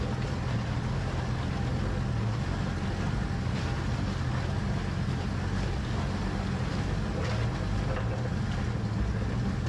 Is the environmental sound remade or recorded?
recorded